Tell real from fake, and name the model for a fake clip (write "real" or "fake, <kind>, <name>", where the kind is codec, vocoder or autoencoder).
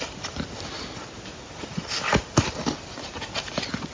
real